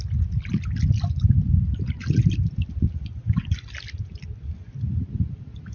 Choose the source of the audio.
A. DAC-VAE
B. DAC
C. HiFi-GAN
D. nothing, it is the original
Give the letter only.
D